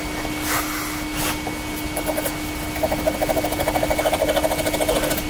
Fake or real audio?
real